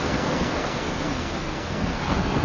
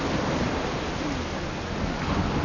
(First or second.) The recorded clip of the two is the second